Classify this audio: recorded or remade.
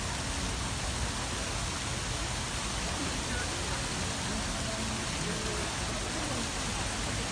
recorded